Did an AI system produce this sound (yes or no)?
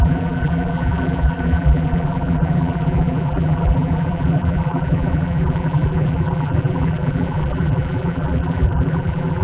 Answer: yes